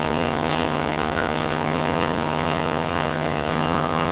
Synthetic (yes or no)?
yes